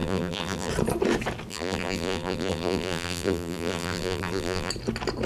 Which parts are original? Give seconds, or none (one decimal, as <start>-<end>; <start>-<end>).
0.7-1.5; 4.7-5.3